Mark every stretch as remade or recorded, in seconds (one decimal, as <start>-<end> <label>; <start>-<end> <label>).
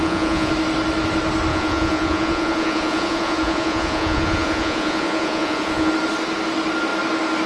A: 0.0-0.5 remade; 0.5-1.5 recorded; 1.5-5.9 remade; 5.9-7.5 recorded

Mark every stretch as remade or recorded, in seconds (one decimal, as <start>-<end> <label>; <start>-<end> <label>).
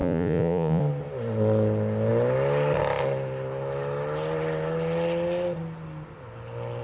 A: 0.0-0.8 remade; 0.8-6.8 recorded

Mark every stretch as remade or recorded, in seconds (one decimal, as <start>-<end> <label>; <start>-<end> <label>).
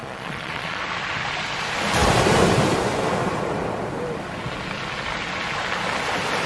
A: 0.0-0.8 remade; 0.8-6.5 recorded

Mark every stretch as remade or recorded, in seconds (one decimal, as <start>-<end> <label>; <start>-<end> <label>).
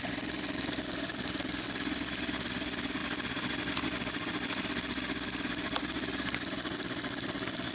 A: 0.0-7.7 recorded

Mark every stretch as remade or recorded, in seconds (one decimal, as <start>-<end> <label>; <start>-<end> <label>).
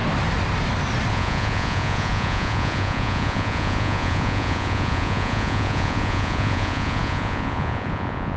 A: 0.0-1.1 recorded; 1.1-8.4 remade